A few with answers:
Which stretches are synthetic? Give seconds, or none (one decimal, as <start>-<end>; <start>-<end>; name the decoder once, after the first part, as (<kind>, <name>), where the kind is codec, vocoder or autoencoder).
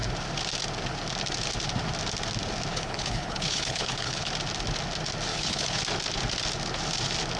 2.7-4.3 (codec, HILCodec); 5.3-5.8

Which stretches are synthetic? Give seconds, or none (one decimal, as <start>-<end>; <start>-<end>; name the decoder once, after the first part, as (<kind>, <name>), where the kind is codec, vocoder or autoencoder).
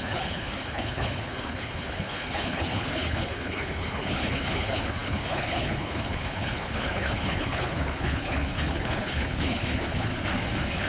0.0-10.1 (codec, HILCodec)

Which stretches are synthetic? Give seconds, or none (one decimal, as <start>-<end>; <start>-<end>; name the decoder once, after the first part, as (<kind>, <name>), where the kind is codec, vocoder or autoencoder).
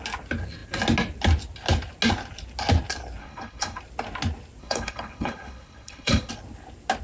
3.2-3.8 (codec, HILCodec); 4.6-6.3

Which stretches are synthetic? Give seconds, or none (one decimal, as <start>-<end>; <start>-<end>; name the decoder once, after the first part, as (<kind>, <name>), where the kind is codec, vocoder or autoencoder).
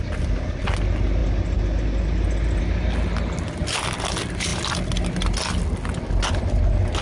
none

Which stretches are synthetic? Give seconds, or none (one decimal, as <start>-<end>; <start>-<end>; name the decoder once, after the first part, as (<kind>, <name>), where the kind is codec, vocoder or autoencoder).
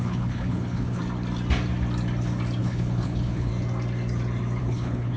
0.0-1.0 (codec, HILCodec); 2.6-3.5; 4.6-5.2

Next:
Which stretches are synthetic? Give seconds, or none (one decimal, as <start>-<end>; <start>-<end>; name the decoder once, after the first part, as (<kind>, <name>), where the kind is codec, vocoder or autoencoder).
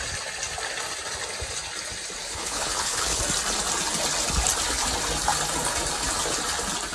2.2-3.2 (codec, HILCodec)